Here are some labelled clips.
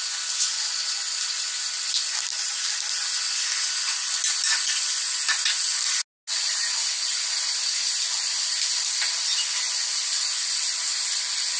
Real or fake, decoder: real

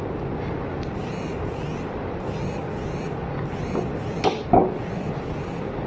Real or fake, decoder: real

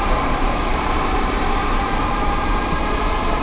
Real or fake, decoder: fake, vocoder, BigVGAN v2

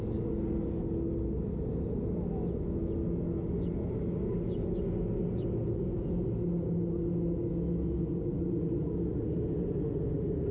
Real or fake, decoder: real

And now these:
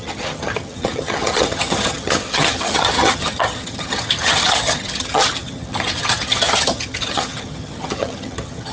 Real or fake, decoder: fake, vocoder, HiFi-GAN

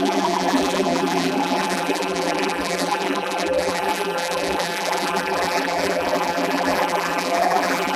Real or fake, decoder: fake, vocoder, BigVGAN v2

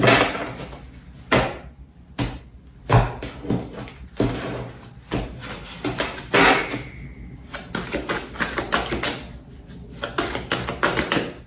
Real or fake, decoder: real